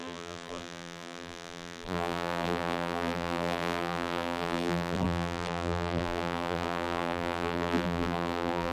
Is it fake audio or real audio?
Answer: fake